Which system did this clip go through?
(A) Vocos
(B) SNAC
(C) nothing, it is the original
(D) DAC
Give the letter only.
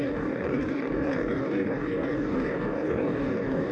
D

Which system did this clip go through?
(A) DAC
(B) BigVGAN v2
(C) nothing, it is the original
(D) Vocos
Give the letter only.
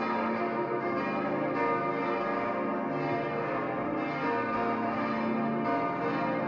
C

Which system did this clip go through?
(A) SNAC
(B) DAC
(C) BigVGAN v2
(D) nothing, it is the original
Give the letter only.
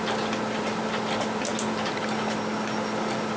D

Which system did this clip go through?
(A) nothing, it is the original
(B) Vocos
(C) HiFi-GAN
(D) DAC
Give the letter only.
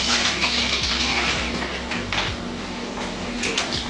D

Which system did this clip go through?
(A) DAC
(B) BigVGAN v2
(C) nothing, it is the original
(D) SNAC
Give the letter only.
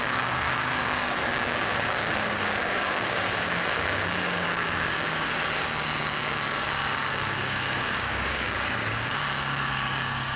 A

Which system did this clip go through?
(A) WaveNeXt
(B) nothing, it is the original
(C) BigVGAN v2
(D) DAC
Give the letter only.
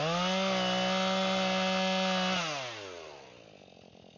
B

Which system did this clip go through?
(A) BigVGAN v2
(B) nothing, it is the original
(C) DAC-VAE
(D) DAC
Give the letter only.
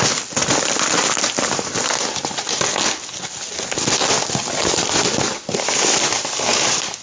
B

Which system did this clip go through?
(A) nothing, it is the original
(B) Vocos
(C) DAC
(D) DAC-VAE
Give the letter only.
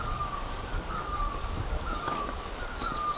C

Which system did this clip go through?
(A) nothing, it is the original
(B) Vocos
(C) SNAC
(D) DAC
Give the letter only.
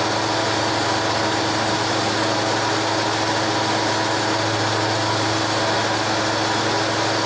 A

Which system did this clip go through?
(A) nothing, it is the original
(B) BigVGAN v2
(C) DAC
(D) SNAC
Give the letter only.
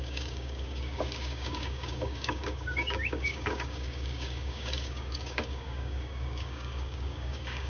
C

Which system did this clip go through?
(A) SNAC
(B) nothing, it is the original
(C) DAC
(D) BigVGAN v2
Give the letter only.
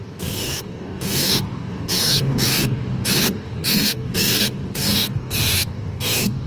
C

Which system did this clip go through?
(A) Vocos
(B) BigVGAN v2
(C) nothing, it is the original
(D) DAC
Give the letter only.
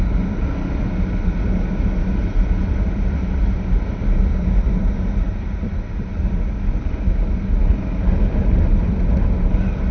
C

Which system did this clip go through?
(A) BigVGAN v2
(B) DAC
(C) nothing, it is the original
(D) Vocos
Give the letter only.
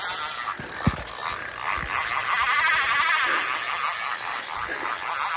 C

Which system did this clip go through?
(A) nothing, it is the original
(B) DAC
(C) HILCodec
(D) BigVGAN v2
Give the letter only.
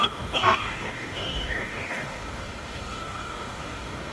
B